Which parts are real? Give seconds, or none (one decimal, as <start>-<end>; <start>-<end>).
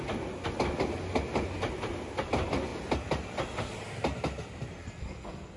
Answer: 0.0-4.8